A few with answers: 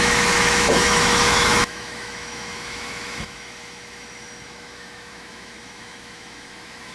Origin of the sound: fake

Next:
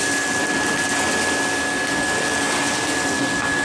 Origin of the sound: real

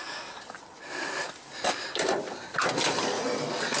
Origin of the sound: real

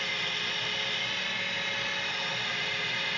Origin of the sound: real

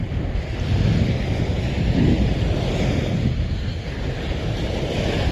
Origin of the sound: real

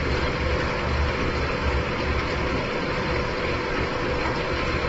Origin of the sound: real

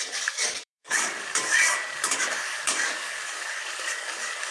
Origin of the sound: fake